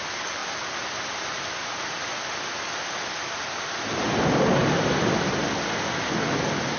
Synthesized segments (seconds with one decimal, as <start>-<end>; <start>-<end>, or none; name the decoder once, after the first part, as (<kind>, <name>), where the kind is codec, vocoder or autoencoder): 4.6-5.4 (vocoder, BigVGAN v2)